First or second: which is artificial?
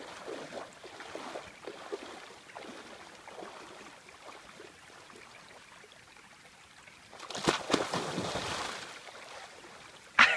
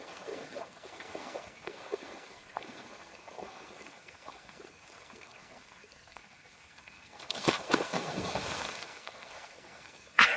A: second